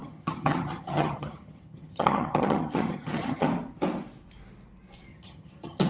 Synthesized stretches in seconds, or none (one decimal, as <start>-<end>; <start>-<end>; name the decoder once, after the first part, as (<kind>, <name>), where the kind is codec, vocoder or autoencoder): 0.0-3.5 (vocoder, HiFi-GAN); 5.1-5.9